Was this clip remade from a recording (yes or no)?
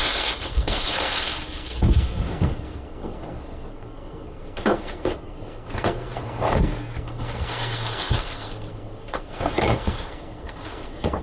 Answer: yes